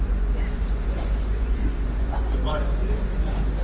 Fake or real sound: fake